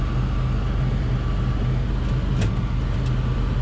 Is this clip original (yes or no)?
yes